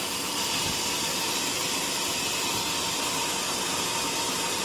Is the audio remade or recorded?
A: recorded